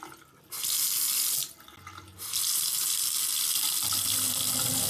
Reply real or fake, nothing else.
real